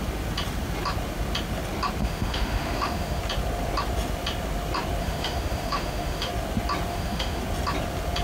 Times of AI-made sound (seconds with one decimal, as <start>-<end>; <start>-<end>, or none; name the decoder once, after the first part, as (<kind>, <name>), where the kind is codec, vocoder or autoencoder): 2.0-3.2 (autoencoder, DAC-VAE); 5.0-6.3; 6.9-7.4